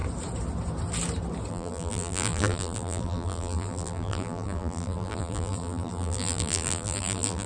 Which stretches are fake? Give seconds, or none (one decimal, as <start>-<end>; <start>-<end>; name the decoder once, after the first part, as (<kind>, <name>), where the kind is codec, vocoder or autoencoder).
1.5-7.5 (vocoder, BigVGAN v2)